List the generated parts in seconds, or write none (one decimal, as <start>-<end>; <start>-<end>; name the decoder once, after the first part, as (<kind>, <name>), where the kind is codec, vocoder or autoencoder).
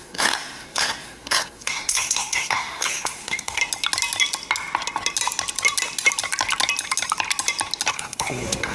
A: 0.0-3.6 (codec, SNAC); 7.9-8.7